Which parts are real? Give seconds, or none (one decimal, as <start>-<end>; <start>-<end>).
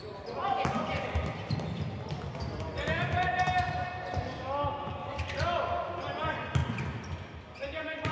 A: 0.0-8.1